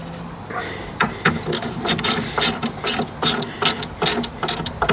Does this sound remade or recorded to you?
recorded